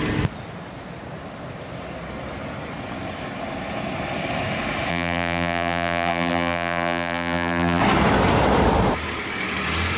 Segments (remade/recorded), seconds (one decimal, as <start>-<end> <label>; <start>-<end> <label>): 0.0-4.9 recorded; 4.9-7.8 remade; 7.8-10.0 recorded